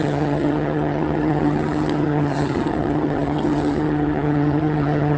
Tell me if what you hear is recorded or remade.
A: remade